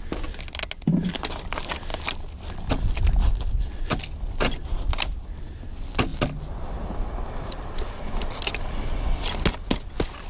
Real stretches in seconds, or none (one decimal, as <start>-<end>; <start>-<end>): 0.0-10.3